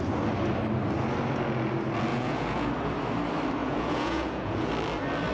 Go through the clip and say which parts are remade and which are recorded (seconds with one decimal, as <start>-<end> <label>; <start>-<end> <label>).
0.0-2.1 recorded; 2.1-2.7 remade; 2.7-3.6 recorded; 3.6-4.7 remade; 4.7-5.3 recorded